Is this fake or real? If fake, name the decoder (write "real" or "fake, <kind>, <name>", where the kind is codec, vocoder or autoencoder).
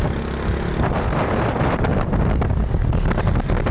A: real